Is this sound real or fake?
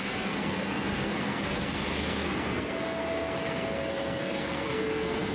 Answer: fake